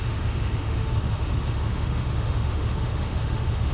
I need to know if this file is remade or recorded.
remade